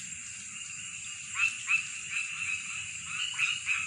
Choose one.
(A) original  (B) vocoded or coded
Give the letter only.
A